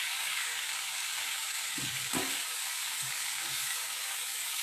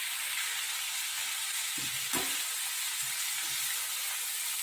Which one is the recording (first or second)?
second